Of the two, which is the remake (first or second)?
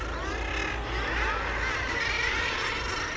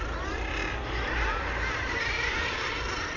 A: second